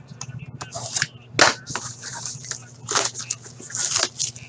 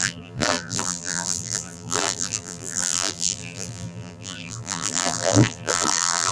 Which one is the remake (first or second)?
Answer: second